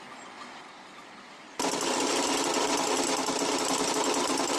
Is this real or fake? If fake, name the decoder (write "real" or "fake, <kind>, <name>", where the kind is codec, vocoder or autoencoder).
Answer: real